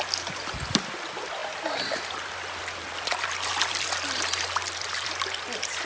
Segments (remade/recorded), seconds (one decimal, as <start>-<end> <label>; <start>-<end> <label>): 0.0-5.9 recorded